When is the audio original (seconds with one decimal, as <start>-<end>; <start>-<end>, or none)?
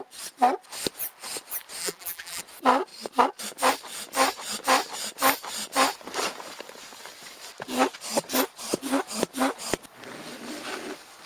0.0-1.8; 2.4-11.3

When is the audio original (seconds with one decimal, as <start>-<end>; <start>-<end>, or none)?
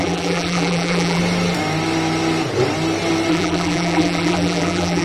1.2-3.3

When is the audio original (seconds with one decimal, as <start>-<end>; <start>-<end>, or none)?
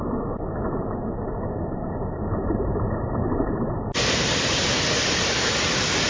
0.0-1.8; 5.5-6.1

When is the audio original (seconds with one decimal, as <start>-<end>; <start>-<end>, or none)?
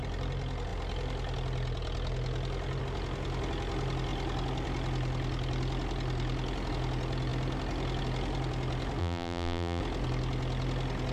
0.0-9.0; 9.8-11.1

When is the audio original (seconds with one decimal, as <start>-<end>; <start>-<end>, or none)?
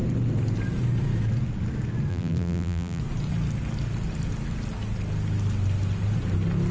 0.0-2.1; 3.0-6.7